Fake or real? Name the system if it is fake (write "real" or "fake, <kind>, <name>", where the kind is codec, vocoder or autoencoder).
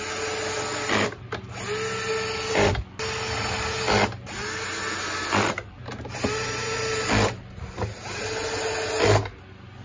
real